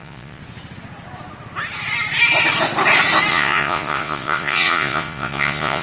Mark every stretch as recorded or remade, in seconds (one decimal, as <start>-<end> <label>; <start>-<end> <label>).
0.0-0.4 remade; 0.4-3.3 recorded; 3.3-5.8 remade